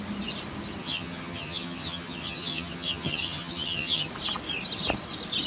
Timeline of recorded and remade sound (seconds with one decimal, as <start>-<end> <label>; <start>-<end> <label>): 0.0-0.8 recorded; 0.8-4.1 remade; 4.1-5.5 recorded